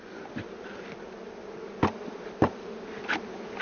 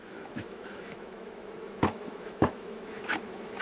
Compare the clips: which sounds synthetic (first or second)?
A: second